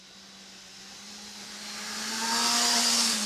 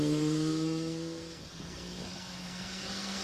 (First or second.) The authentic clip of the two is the first